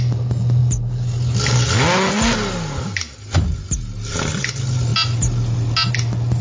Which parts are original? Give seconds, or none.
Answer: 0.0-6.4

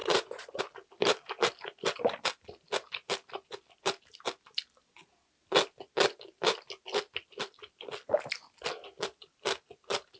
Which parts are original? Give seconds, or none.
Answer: 0.6-10.2

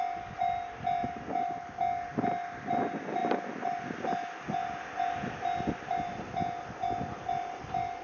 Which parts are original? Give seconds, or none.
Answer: 0.0-8.0